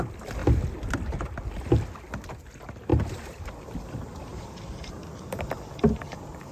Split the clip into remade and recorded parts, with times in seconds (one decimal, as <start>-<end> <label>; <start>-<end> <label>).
0.0-2.9 recorded; 2.9-3.5 remade; 3.5-4.3 recorded; 4.3-5.0 remade; 5.0-6.5 recorded